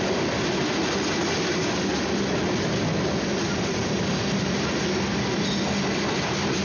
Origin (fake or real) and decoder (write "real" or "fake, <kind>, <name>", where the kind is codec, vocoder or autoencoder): real